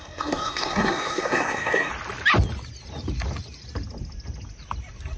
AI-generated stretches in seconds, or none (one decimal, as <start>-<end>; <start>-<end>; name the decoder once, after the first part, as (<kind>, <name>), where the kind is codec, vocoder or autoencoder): 0.0-1.9 (codec, SNAC)